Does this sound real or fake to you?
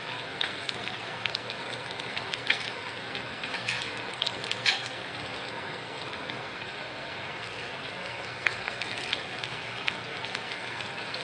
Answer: fake